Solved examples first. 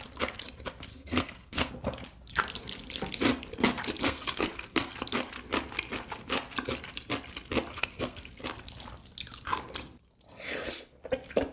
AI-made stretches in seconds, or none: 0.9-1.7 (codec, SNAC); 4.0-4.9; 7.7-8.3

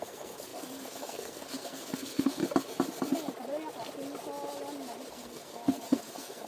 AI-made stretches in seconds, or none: 0.0-2.4 (codec, SNAC); 5.1-6.5

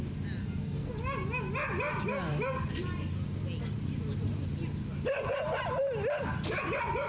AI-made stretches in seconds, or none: 0.4-0.9 (codec, SNAC)

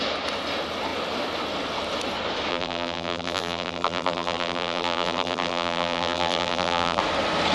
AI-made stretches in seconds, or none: 2.5-7.0 (vocoder, BigVGAN v2)

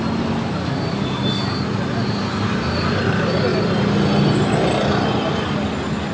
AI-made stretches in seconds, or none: none

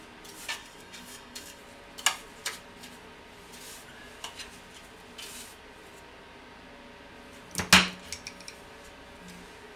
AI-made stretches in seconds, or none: 0.6-1.6 (codec, DAC)

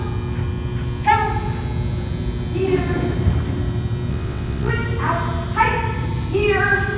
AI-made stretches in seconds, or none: 4.1-4.7 (vocoder, WaveNeXt)

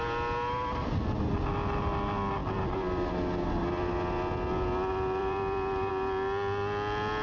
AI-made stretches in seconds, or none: 2.4-3.1 (vocoder, BigVGAN v2); 5.2-5.9